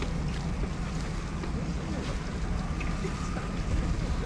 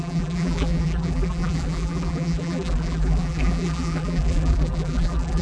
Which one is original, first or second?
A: first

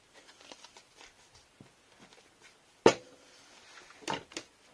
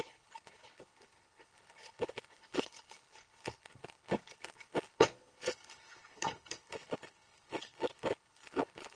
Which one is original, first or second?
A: first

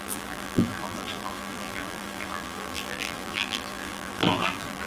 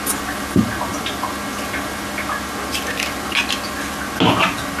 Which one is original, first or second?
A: second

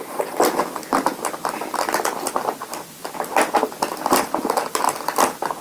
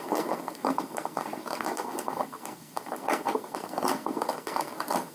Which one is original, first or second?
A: first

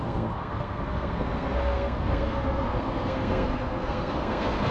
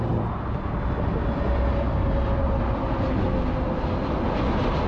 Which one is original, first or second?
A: second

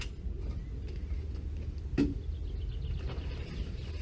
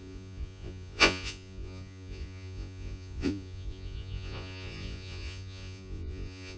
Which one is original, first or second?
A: first